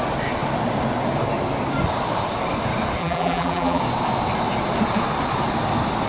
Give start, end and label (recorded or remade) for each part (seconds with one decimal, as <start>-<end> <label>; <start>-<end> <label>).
0.0-3.0 recorded; 3.0-3.8 remade; 3.8-6.1 recorded